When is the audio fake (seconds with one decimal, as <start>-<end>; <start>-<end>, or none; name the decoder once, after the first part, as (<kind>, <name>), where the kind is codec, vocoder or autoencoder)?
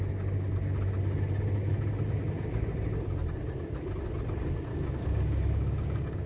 4.7-6.3 (codec, DAC)